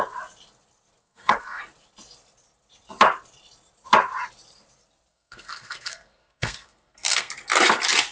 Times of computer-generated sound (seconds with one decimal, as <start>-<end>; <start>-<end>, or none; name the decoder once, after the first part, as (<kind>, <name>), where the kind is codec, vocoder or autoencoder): 1.0-1.6 (codec, SNAC); 5.1-7.3